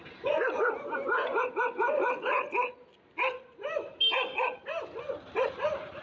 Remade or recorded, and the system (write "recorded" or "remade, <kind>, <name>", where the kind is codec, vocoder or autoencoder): remade, vocoder, BigVGAN v2